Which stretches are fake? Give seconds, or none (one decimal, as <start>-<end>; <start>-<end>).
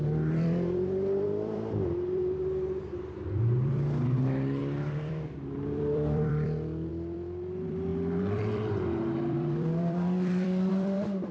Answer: 0.0-11.3